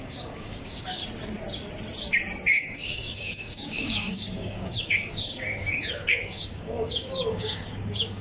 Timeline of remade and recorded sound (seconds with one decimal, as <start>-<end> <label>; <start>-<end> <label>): 0.0-1.0 remade; 1.0-2.5 recorded; 2.5-8.2 remade